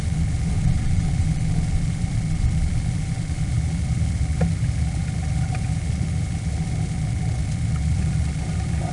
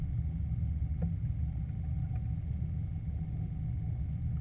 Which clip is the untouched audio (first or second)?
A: second